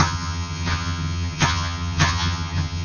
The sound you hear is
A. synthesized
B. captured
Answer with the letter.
A